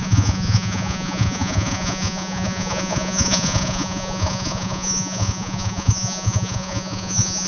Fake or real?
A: fake